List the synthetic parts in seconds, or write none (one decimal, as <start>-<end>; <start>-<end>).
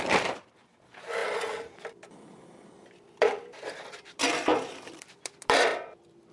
0.0-1.2; 2.1-6.3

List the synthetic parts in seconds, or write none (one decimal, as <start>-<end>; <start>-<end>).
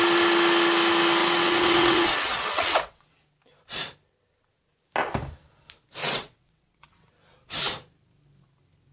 1.2-3.1; 6.0-7.1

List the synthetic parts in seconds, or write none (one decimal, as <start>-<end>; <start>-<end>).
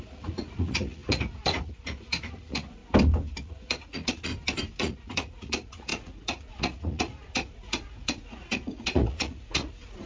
0.0-2.8; 3.4-4.3; 4.8-10.1